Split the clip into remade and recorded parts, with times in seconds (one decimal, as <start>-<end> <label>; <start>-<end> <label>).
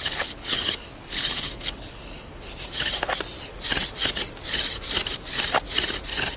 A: 0.0-2.3 remade; 2.3-6.4 recorded